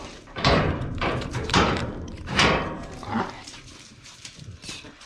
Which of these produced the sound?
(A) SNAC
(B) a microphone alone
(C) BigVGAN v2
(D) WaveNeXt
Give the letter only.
C